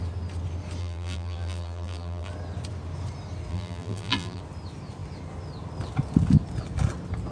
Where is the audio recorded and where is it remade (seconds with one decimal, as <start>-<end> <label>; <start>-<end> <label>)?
0.0-0.8 recorded; 0.8-2.3 remade; 2.3-3.5 recorded; 3.5-4.4 remade; 4.4-7.3 recorded